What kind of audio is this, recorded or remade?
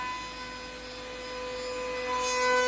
recorded